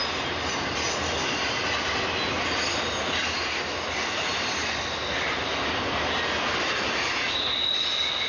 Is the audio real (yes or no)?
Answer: yes